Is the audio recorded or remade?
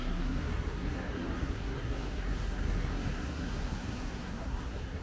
remade